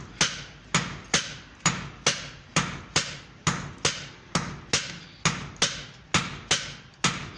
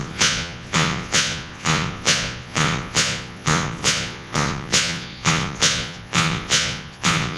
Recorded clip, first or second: first